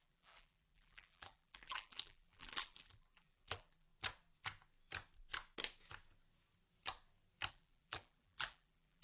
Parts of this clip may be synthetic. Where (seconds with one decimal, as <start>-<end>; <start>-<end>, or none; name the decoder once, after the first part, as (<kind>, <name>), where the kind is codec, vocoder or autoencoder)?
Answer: 0.0-3.9 (vocoder, BigVGAN v2); 7.5-9.0

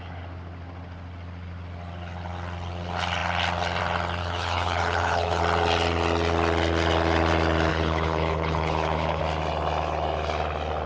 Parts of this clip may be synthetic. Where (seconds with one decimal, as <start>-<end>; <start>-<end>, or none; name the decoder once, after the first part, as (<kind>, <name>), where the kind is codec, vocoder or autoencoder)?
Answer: 4.2-5.4 (codec, HILCodec); 7.7-9.2